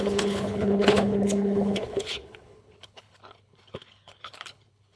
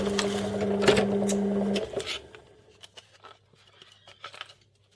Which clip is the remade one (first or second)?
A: first